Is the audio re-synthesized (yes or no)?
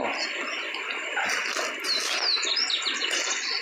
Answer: no